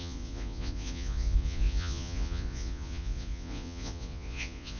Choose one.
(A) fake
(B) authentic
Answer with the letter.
A